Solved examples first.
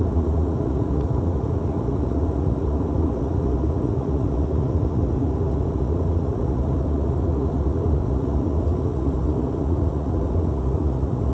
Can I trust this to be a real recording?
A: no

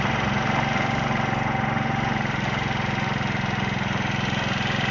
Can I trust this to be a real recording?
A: yes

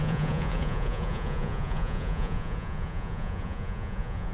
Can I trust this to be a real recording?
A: no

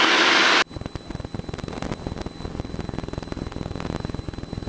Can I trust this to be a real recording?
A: yes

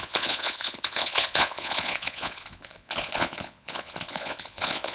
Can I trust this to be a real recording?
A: no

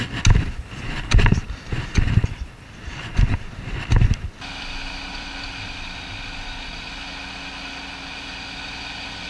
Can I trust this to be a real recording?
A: yes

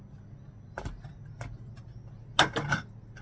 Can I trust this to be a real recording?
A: yes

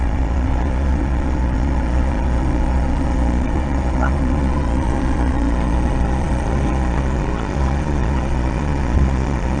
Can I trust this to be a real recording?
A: no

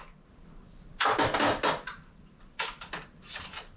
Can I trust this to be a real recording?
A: yes